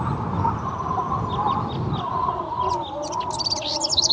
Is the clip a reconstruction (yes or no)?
no